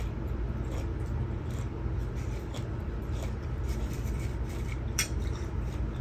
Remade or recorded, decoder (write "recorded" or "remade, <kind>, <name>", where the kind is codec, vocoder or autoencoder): remade, vocoder, BigVGAN v2